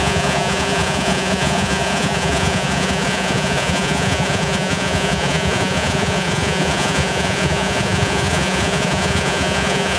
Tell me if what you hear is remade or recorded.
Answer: remade